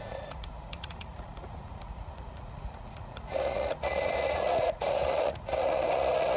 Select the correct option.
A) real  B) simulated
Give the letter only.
B